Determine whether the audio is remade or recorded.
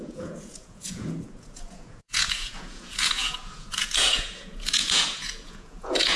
remade